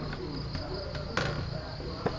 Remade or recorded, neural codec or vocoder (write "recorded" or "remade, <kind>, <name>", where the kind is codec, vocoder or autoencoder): recorded